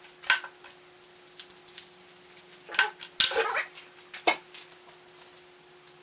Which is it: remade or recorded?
recorded